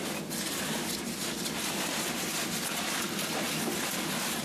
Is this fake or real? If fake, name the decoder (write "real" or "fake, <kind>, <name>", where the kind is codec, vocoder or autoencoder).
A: real